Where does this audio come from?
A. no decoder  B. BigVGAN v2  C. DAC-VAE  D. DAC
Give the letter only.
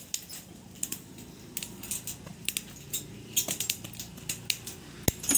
A